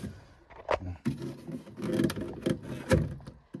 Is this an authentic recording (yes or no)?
yes